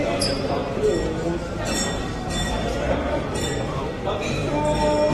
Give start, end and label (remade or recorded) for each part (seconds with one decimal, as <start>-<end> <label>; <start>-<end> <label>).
0.0-0.6 remade; 0.6-1.5 recorded; 1.5-4.4 remade; 4.4-5.1 recorded